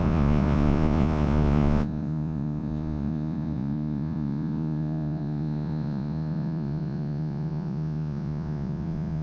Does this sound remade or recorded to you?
remade